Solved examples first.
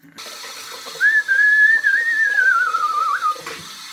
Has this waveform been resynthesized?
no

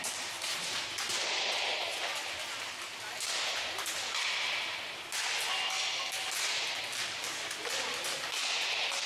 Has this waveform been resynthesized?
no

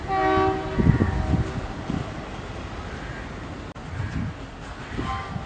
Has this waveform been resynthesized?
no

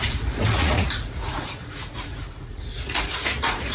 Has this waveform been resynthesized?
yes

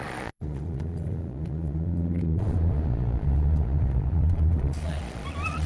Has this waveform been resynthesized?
yes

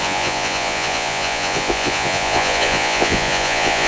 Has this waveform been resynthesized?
yes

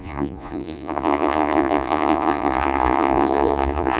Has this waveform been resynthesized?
yes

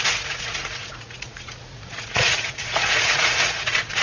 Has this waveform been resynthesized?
yes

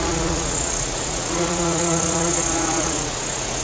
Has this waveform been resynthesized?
yes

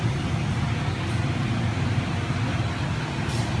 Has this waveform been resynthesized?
no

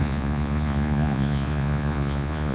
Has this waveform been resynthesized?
yes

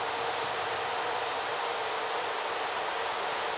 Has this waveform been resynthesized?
no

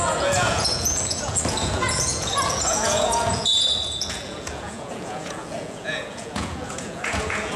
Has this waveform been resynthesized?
yes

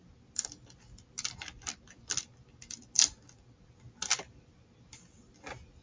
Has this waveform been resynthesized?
no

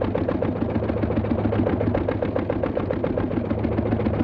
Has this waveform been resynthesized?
no